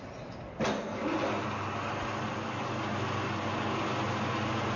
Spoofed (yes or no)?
no